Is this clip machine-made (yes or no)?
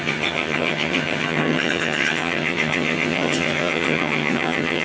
yes